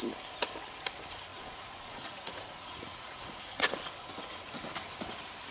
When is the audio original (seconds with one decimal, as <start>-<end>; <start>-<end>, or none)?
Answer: 0.0-1.3; 3.9-5.5